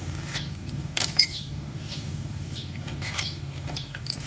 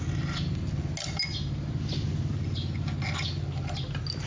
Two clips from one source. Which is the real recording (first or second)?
second